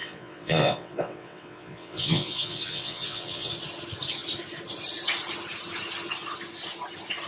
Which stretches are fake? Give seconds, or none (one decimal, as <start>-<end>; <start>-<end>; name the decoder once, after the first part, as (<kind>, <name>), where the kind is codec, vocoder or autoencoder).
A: 0.0-3.5 (vocoder, WaveNeXt)

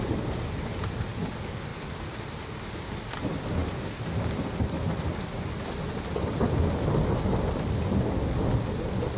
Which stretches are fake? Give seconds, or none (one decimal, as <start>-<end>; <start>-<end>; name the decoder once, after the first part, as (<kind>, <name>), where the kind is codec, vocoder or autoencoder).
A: none

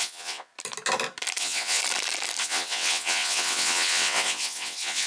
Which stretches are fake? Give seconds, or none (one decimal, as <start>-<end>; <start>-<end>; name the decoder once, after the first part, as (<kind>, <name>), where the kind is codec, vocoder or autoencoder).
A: 0.0-0.5 (vocoder, WaveNeXt); 1.4-1.8; 2.4-5.1